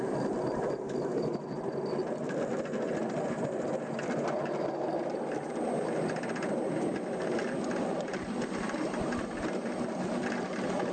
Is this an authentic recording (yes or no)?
yes